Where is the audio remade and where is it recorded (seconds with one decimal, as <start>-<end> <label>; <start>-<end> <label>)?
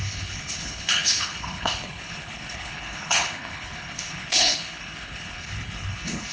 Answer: 0.0-6.3 remade